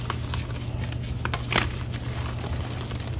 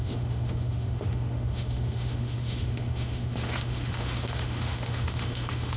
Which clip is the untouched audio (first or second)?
first